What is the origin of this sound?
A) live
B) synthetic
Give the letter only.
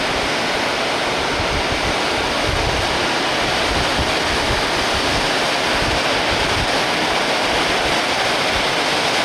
A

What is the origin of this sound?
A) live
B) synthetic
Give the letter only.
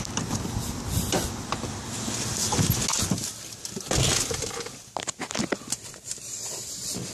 A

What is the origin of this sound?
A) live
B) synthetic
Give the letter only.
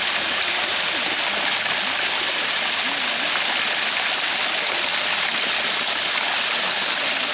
A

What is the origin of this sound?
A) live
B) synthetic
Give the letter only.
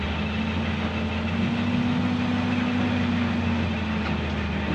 A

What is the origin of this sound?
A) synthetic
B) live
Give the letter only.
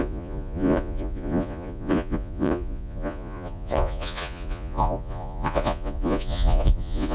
A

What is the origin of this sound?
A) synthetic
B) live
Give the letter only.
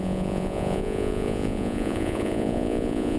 A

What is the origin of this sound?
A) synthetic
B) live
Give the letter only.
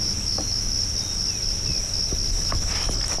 B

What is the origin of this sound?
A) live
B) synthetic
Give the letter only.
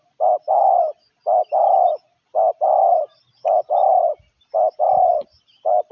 A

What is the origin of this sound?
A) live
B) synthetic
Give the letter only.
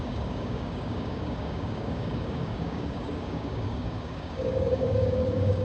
B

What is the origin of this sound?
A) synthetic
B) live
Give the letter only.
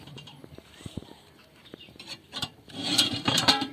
A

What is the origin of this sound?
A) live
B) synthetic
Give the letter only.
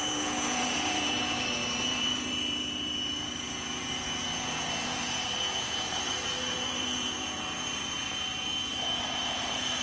B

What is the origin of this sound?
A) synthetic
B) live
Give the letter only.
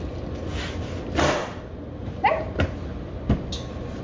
B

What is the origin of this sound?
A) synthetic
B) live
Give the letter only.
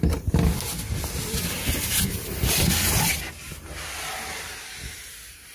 B